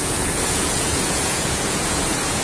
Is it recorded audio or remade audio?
remade